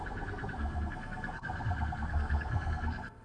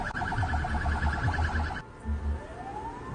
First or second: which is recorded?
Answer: second